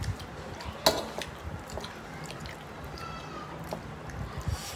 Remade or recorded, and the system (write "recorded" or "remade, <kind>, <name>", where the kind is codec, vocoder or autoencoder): recorded